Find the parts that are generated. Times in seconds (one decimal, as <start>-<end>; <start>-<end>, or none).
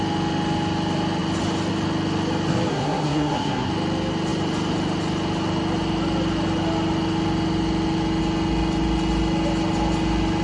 2.7-3.7